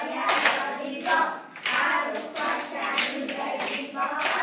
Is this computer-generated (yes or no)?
no